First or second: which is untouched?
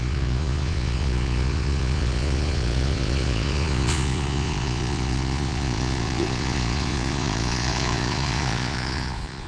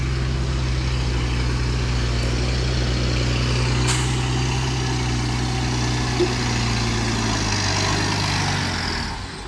second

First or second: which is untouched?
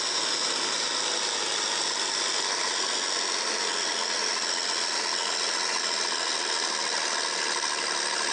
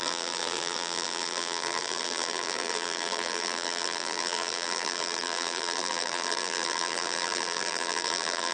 first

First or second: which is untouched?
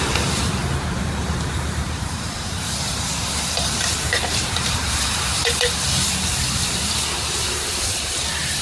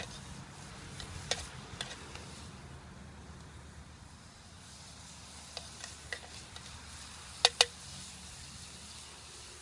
second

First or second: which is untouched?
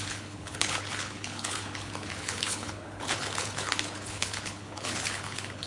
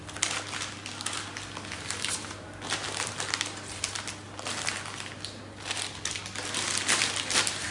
second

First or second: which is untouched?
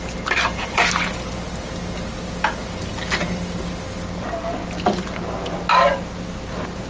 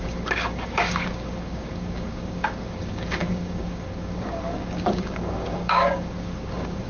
first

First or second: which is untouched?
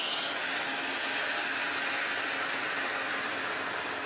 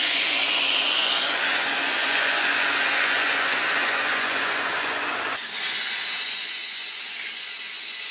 first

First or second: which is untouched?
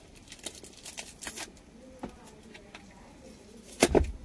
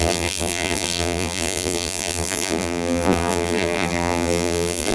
first